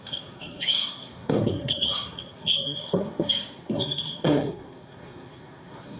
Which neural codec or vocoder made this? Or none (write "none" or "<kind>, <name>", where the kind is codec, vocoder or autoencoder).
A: codec, SNAC